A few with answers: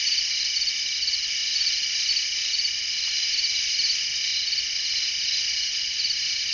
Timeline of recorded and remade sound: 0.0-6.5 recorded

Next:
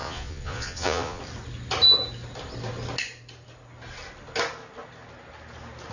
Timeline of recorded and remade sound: 0.0-1.2 remade; 1.2-5.9 recorded

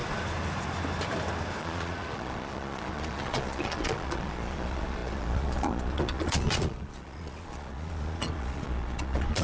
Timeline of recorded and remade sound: 0.0-1.6 recorded; 1.6-9.4 remade

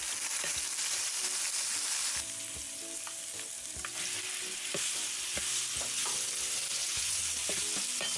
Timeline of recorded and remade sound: 0.0-6.7 recorded; 6.7-7.2 remade; 7.2-8.2 recorded